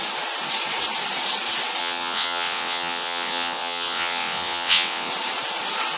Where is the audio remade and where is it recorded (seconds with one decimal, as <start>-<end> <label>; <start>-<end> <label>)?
0.0-1.8 recorded; 1.8-5.1 remade; 5.1-6.0 recorded

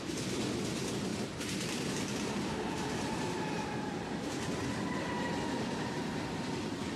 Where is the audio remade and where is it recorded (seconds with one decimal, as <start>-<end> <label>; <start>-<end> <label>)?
0.0-1.1 recorded; 1.1-5.3 remade; 5.3-7.0 recorded